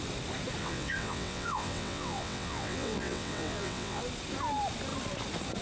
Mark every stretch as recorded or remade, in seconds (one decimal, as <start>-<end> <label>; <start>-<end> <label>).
0.0-0.6 recorded; 0.6-4.0 remade; 4.0-5.6 recorded